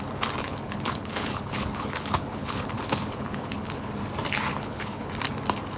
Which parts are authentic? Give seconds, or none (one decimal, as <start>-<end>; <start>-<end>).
0.0-0.4; 3.9-4.5; 5.1-5.8